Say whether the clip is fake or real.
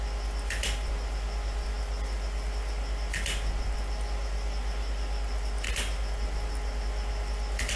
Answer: real